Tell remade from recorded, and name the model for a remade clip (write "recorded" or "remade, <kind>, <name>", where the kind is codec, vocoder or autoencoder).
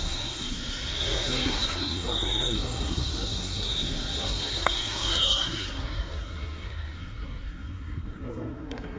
remade, codec, SNAC